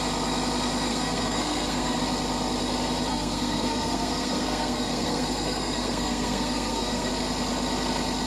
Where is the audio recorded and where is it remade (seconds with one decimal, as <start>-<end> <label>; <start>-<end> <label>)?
0.0-0.9 recorded; 0.9-2.0 remade; 2.0-3.1 recorded; 3.1-7.1 remade; 7.1-8.3 recorded